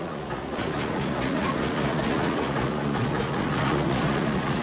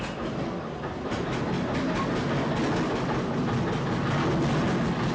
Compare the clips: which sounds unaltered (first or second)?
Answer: second